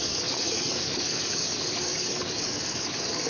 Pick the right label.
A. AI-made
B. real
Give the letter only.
A